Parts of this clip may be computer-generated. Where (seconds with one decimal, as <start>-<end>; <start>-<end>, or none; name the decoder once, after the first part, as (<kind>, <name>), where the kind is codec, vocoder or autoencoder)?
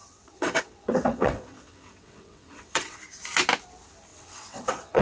0.0-3.0 (vocoder, WaveNeXt); 4.1-5.0